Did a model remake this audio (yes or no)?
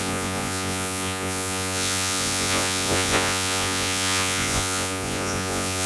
yes